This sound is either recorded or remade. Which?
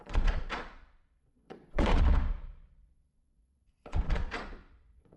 remade